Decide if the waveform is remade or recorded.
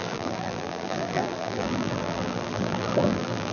remade